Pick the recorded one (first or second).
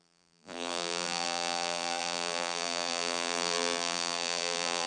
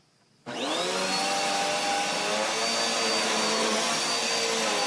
second